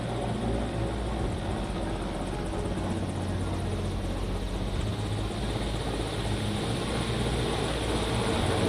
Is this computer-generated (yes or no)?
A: no